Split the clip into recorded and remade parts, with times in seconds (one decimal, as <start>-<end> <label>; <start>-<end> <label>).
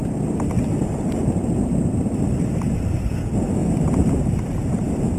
0.0-3.1 remade; 3.1-3.6 recorded; 3.6-5.2 remade